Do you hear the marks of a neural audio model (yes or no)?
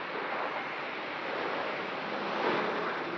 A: no